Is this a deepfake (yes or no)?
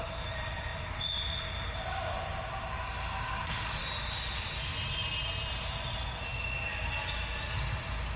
no